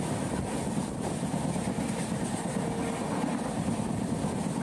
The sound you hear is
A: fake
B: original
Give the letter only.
B